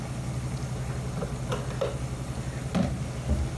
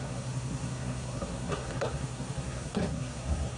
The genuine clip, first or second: first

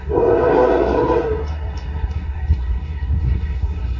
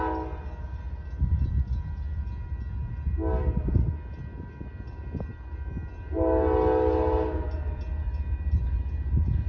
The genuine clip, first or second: second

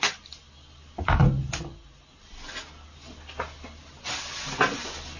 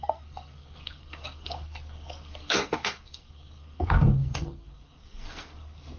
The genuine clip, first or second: first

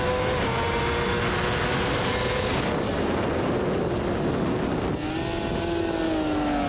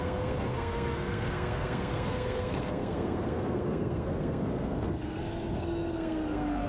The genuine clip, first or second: first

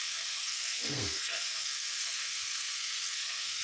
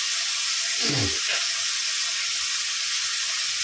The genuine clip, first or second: second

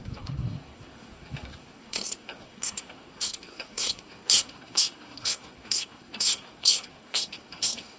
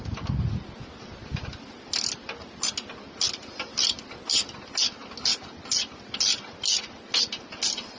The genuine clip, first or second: second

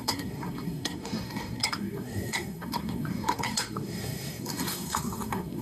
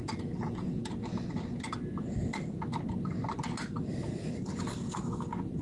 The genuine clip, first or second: second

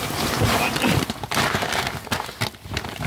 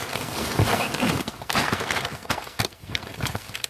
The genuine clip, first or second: first